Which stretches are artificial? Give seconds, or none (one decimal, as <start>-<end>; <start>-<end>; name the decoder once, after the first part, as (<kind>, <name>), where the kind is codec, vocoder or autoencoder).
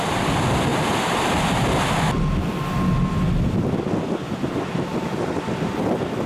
none